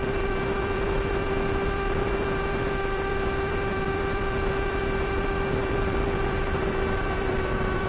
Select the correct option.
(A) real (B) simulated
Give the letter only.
B